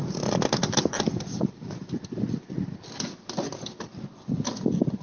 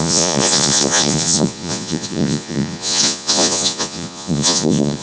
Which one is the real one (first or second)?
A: first